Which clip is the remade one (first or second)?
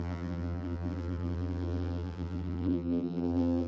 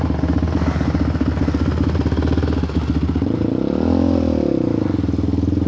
first